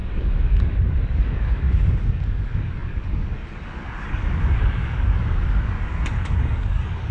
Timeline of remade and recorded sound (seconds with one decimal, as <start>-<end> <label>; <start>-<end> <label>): 0.0-7.1 remade